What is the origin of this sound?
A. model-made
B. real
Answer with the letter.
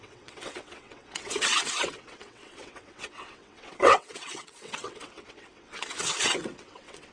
A